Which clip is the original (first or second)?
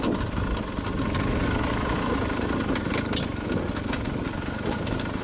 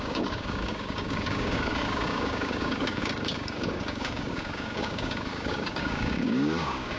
first